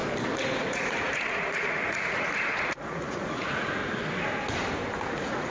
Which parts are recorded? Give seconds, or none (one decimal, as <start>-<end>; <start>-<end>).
0.0-0.6; 3.8-5.1